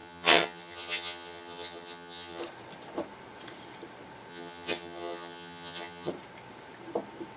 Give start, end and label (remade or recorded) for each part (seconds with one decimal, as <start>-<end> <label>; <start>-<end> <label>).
0.0-2.4 remade; 2.4-4.3 recorded; 4.3-6.1 remade; 6.1-7.4 recorded